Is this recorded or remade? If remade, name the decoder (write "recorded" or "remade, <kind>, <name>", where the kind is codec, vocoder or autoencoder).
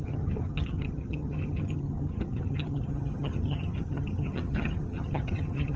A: remade, vocoder, HiFi-GAN